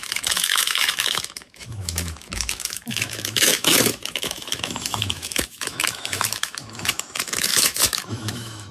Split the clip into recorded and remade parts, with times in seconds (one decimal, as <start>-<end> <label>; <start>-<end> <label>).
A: 0.0-8.7 remade